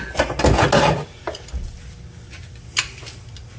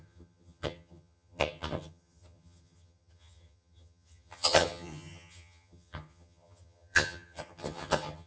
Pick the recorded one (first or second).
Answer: first